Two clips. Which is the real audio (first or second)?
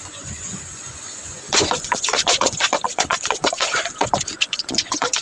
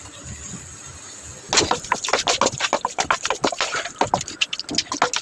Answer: second